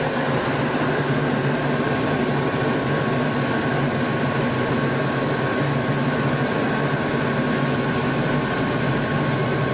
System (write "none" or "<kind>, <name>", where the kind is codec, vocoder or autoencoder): none